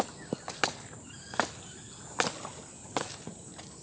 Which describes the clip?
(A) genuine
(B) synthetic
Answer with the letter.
A